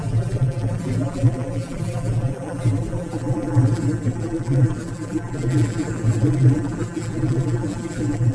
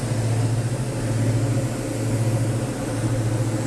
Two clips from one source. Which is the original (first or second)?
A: second